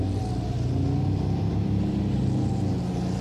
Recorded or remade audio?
recorded